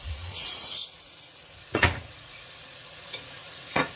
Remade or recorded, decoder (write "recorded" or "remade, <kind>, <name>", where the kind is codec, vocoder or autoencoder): remade, vocoder, Vocos